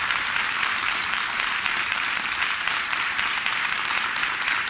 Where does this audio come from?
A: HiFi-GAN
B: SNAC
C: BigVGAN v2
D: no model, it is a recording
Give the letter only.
C